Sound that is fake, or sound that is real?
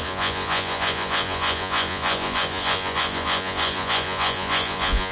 fake